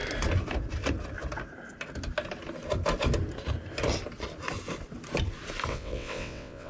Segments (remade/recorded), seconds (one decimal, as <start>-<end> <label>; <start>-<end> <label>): 0.0-5.7 recorded; 5.7-6.7 remade